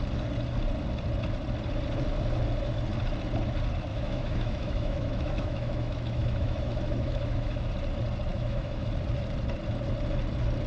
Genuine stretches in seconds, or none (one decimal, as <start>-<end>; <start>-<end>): 0.0-3.9; 7.7-8.3; 8.9-10.7